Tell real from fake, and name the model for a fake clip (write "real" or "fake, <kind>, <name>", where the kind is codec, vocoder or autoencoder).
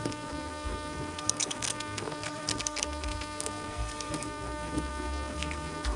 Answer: fake, codec, SNAC